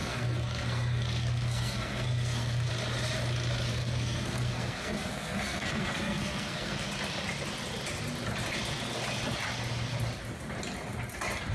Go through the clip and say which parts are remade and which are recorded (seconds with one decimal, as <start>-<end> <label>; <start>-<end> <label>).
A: 0.0-2.7 remade; 2.7-3.7 recorded; 3.7-6.9 remade; 6.9-11.5 recorded